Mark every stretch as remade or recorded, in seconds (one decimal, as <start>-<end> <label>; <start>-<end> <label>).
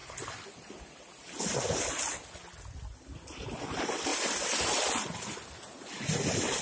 0.0-6.6 recorded